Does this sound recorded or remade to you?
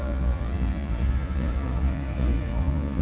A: remade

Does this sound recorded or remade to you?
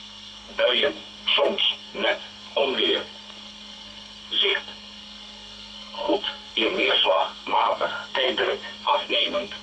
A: remade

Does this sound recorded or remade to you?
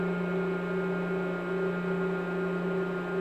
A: recorded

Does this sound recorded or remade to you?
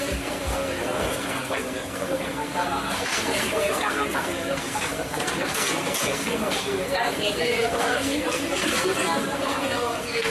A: remade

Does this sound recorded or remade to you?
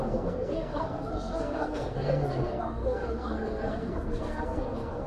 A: remade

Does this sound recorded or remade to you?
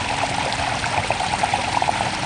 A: recorded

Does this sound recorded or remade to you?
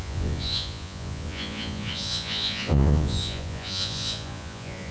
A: remade